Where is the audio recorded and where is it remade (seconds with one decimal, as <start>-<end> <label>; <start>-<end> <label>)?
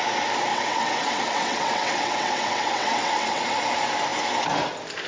0.0-0.5 recorded; 0.5-3.6 remade; 3.6-5.1 recorded